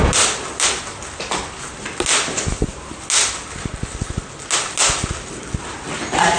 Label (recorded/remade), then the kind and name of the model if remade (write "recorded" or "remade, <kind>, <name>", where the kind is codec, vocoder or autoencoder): recorded